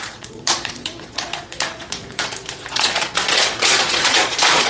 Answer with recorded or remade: remade